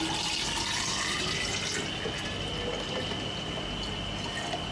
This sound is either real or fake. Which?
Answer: real